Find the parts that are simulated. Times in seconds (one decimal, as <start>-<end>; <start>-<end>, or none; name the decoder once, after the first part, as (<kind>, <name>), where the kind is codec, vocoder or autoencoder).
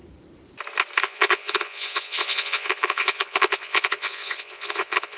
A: 1.0-5.2 (vocoder, Vocos)